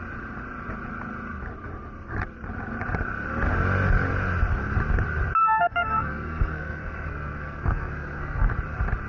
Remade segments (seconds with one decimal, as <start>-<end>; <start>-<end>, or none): 5.4-8.5